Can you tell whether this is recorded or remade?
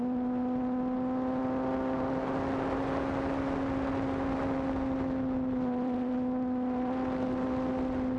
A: recorded